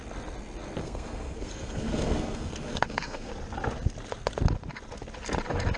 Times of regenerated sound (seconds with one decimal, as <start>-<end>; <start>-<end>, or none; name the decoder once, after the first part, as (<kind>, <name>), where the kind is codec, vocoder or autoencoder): 0.8-3.3 (codec, SNAC)